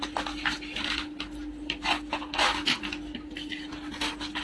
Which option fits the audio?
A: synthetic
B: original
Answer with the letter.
B